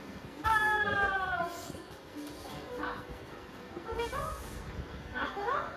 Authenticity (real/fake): fake